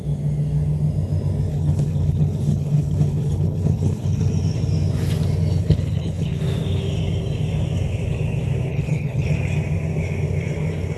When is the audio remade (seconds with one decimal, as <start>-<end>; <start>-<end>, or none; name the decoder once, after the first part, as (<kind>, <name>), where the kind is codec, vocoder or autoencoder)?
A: 1.5-4.3 (codec, HILCodec); 5.6-6.4; 8.7-9.3